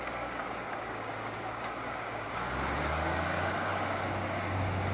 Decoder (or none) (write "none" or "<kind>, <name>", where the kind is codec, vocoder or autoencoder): codec, DAC